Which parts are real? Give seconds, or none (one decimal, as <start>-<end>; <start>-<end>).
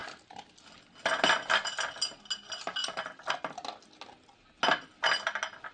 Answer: 0.0-5.7